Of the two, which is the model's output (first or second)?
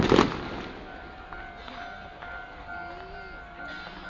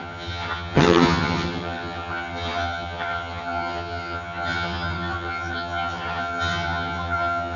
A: second